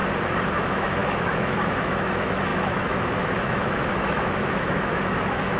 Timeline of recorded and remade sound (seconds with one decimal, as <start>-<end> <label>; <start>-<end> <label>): 0.0-0.5 recorded; 0.5-5.6 remade